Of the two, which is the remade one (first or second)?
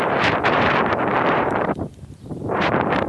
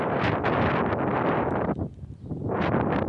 first